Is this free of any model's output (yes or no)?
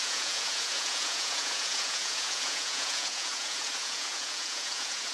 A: no